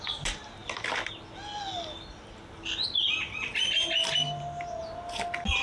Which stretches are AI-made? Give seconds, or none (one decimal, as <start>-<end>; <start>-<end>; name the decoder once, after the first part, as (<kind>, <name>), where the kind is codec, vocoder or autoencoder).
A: none